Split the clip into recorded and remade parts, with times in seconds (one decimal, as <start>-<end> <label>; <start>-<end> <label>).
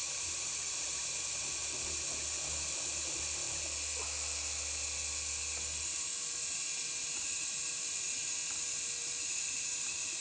0.0-1.0 remade; 1.0-9.0 recorded; 9.0-10.2 remade